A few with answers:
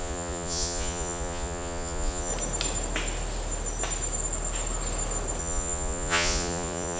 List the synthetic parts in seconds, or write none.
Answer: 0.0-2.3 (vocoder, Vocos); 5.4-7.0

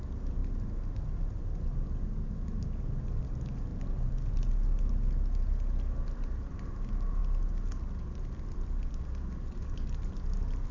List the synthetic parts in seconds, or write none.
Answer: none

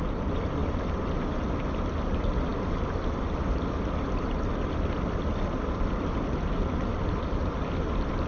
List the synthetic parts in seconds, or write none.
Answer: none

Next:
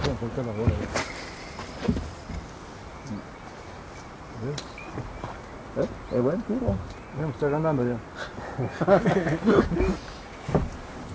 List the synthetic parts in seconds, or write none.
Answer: none

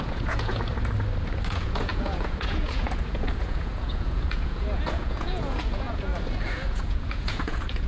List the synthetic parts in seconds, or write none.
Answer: 0.0-0.7 (vocoder, Vocos); 1.5-6.1; 6.7-7.9

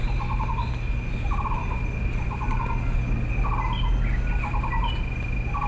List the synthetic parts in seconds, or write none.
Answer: none